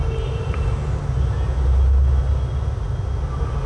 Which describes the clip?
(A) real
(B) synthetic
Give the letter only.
A